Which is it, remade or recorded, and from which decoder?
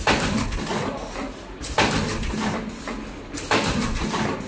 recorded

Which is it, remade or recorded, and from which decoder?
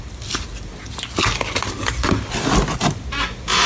recorded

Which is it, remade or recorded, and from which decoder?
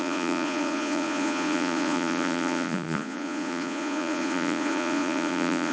remade, vocoder, Vocos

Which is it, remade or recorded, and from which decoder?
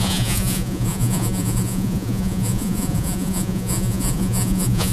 remade, vocoder, Vocos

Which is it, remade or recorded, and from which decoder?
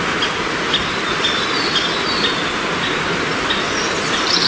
recorded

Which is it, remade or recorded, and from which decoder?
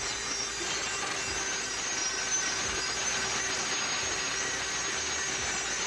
recorded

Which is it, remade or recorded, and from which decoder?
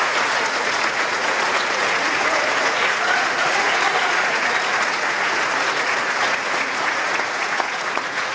remade, vocoder, Vocos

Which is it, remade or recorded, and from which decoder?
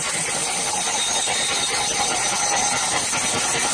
recorded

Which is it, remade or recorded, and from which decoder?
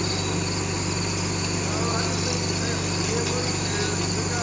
recorded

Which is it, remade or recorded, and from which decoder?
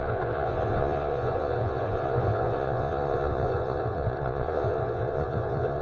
remade, vocoder, Vocos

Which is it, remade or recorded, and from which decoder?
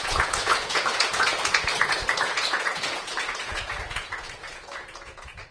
remade, vocoder, Vocos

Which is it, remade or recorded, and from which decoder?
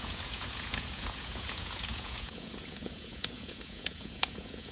remade, vocoder, Vocos